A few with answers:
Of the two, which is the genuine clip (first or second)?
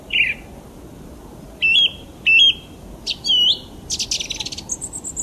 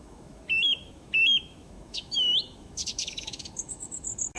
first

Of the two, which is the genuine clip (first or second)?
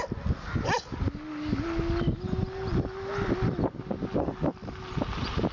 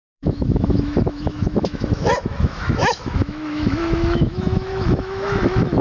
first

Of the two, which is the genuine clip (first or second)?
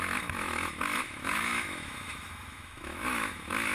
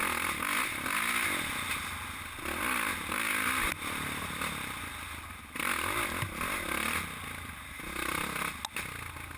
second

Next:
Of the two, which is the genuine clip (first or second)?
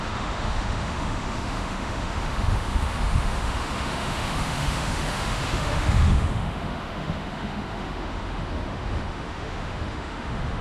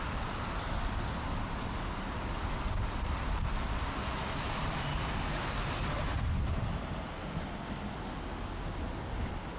second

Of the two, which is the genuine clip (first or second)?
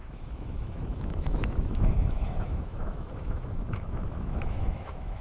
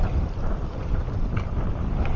second